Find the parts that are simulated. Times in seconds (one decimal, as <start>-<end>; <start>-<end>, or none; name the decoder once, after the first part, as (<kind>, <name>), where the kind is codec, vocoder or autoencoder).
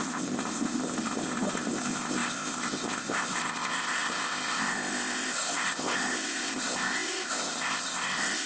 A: 0.0-8.5 (codec, ZipCodec)